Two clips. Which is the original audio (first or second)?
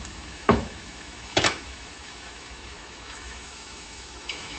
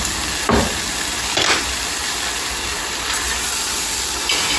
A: second